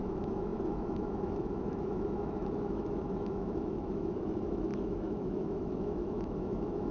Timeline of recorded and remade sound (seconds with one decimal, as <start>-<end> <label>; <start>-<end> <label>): 0.0-6.9 remade